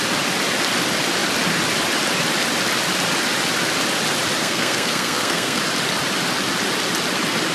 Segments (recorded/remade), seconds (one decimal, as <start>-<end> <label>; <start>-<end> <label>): 0.0-4.4 recorded; 4.4-5.6 remade; 5.6-7.5 recorded